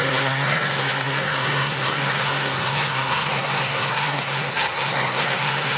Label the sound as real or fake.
fake